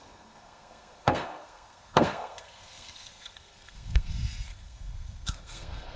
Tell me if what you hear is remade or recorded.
remade